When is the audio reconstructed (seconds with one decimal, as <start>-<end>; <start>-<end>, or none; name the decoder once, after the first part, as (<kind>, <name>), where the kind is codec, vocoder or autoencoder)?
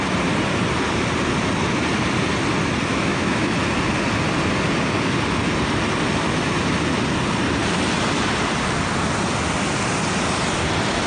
2.9-3.5 (autoencoder, DAC-VAE)